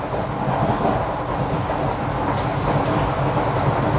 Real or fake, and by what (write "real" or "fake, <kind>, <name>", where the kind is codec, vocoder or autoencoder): real